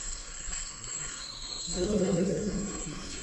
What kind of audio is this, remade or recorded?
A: remade